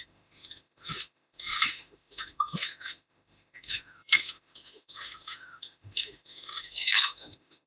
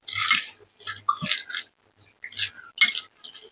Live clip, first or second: second